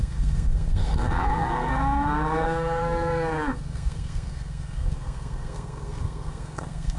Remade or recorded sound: remade